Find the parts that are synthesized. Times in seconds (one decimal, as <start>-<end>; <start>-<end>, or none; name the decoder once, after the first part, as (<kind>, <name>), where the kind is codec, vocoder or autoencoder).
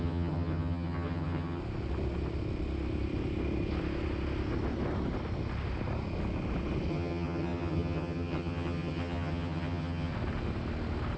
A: 0.0-1.6 (vocoder, HiFi-GAN); 6.9-10.1